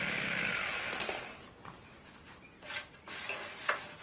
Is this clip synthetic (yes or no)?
no